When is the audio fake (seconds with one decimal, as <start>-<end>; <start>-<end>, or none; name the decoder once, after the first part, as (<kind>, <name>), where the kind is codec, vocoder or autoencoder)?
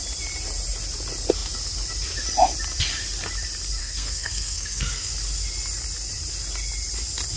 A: 3.8-5.1 (codec, SNAC)